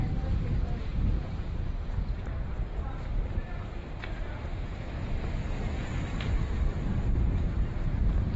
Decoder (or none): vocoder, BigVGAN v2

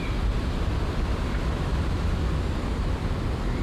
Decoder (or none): none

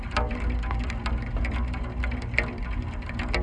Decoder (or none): none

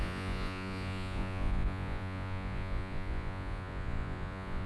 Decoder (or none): vocoder, Vocos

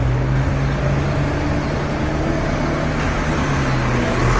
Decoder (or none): none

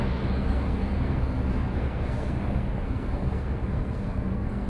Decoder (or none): codec, SNAC